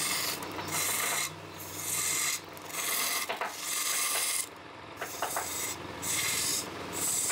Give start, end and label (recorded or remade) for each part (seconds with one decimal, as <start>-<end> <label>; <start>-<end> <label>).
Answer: 0.0-1.7 remade; 1.7-4.1 recorded; 4.1-7.3 remade